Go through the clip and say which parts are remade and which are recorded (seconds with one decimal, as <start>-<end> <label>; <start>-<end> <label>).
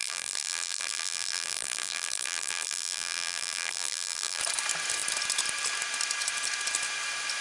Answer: 0.0-4.4 remade; 4.4-7.4 recorded